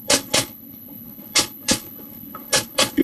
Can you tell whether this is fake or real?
fake